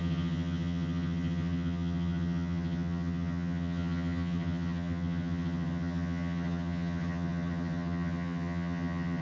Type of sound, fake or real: fake